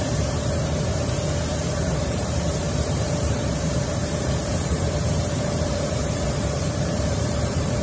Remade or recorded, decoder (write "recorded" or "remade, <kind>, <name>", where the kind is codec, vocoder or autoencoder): remade, vocoder, BigVGAN v2